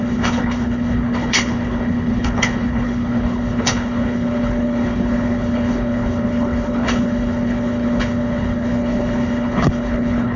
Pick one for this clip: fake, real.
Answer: fake